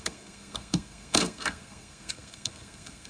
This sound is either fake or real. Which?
fake